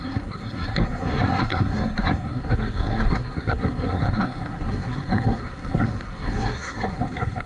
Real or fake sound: fake